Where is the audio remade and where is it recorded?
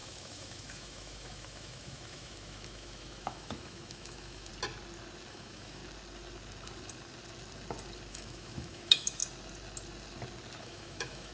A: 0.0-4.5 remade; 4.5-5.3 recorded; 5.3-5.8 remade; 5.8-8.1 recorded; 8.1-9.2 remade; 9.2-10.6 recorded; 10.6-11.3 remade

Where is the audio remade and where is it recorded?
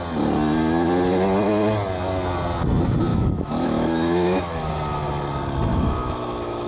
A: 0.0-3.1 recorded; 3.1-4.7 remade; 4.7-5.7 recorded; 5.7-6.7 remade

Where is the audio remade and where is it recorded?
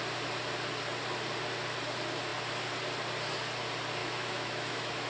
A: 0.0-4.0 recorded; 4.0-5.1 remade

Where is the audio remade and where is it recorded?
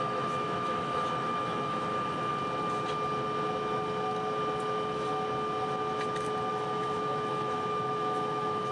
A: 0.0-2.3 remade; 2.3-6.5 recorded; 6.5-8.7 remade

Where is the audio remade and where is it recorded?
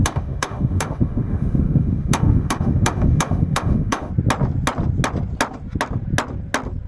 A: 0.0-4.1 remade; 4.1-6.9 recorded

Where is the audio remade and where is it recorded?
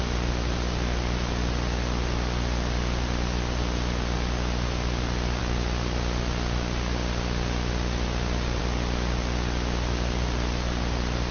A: 0.0-11.3 recorded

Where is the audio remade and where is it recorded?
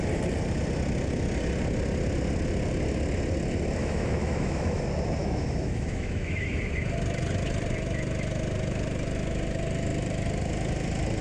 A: 0.0-3.8 recorded; 3.8-4.8 remade; 4.8-5.2 recorded; 5.2-6.5 remade; 6.5-11.2 recorded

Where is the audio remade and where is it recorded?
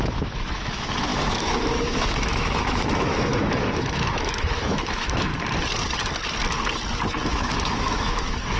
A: 0.0-5.3 remade; 5.3-7.3 recorded; 7.3-8.6 remade